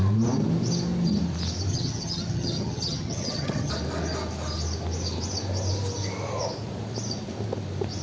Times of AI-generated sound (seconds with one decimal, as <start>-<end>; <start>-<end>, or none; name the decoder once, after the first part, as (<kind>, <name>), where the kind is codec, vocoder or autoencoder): 1.7-3.7 (vocoder, HiFi-GAN)